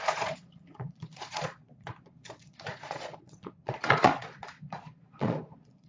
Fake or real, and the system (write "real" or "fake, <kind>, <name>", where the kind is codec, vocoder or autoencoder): fake, vocoder, Vocos